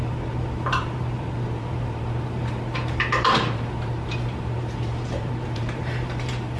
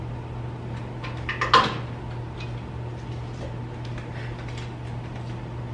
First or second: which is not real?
first